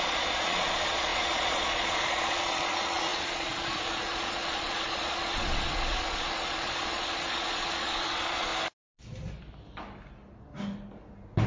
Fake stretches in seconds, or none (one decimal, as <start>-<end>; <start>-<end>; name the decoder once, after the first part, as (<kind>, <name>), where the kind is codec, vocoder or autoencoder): 0.0-8.5 (vocoder, Vocos)